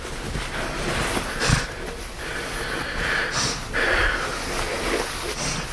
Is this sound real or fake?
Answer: real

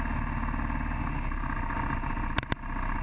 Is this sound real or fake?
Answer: real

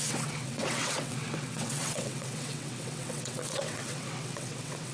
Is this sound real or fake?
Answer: fake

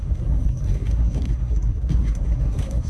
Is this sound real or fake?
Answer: fake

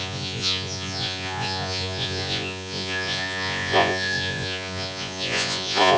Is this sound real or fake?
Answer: fake